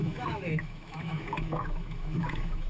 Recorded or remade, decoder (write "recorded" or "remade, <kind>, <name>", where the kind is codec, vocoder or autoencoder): remade, autoencoder, DAC-VAE